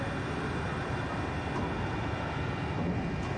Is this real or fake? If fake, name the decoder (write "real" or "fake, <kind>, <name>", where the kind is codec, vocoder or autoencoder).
real